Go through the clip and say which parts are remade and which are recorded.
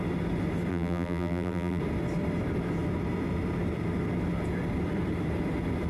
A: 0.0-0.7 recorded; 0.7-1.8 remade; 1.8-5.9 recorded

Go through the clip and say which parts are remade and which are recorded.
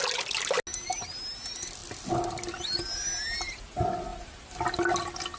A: 0.0-1.8 recorded; 1.8-3.6 remade; 3.6-5.4 recorded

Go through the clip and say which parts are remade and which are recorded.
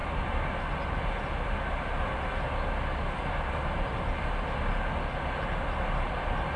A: 0.0-6.6 recorded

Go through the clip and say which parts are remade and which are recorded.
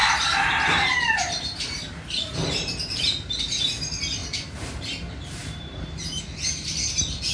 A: 0.0-3.4 remade; 3.4-4.2 recorded; 4.2-6.2 remade; 6.2-7.3 recorded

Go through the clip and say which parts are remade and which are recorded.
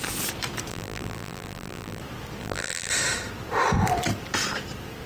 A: 0.0-0.7 recorded; 0.7-2.0 remade; 2.0-2.4 recorded; 2.4-2.9 remade; 2.9-5.1 recorded